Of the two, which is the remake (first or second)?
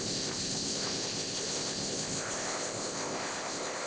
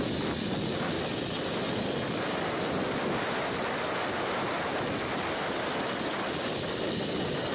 first